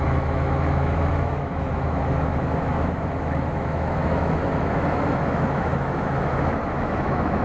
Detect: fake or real fake